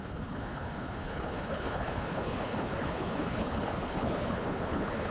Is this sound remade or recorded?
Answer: remade